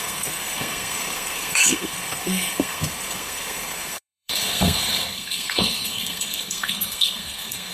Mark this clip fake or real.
fake